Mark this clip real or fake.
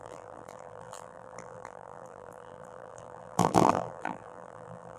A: fake